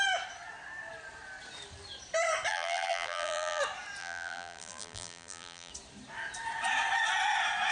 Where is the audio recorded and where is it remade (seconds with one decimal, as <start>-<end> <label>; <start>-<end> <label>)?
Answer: 0.0-2.5 recorded; 2.5-3.6 remade; 3.6-4.0 recorded; 4.0-5.7 remade; 5.7-7.7 recorded